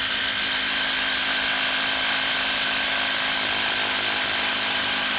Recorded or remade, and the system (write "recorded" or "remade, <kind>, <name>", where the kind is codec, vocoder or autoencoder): recorded